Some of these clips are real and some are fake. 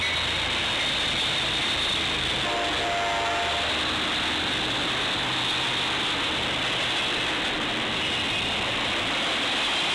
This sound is real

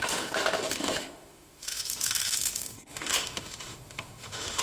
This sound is fake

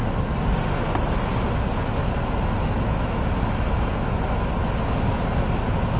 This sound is real